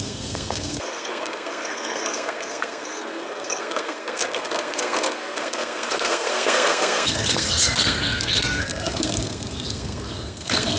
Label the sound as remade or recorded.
remade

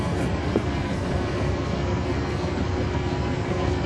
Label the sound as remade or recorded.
remade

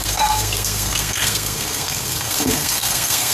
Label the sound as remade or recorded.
remade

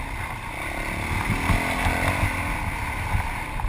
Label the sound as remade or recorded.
recorded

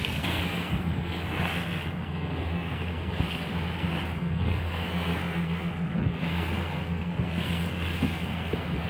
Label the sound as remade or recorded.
remade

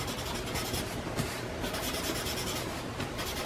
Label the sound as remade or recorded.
recorded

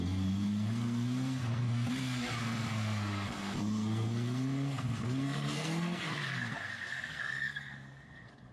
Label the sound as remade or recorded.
remade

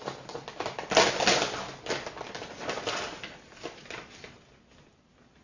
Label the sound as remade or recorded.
recorded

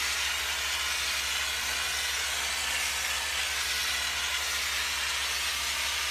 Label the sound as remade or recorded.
recorded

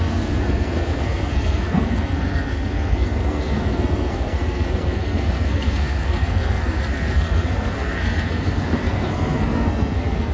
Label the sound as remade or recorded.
remade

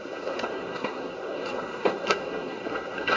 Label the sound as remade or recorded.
remade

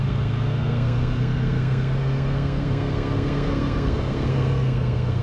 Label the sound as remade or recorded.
remade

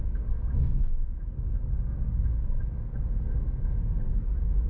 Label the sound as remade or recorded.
remade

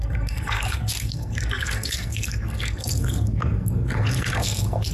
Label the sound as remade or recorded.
remade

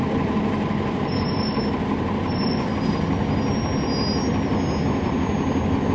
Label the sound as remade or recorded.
recorded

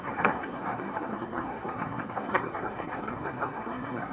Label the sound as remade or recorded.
remade